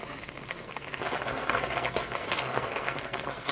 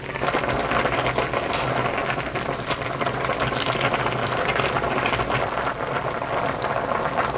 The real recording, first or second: second